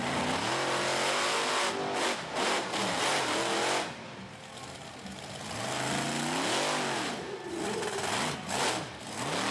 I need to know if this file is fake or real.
real